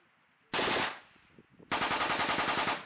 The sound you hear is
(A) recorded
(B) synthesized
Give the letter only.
A